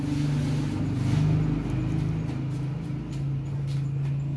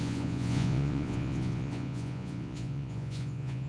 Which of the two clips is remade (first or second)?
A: second